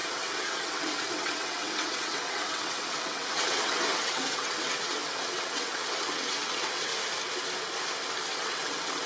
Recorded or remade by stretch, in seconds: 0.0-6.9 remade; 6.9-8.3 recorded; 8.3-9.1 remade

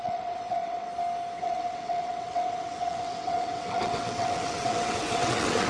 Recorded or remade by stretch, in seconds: 0.0-0.9 remade; 0.9-1.4 recorded; 1.4-5.7 remade

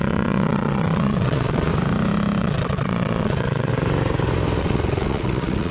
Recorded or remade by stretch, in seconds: 0.0-1.7 remade; 1.7-2.4 recorded; 2.4-3.7 remade; 3.7-4.6 recorded; 4.6-5.7 remade

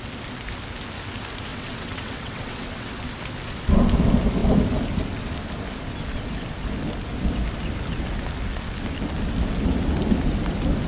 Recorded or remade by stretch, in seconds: 0.0-1.5 recorded; 1.5-2.9 remade; 2.9-10.9 recorded

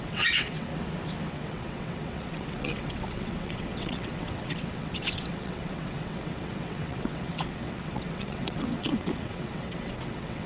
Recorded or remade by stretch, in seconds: 0.0-0.7 remade; 0.7-1.3 recorded; 1.3-10.5 remade